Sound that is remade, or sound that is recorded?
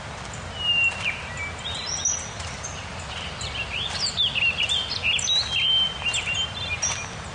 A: recorded